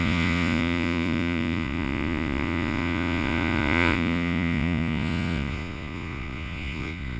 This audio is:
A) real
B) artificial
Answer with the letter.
B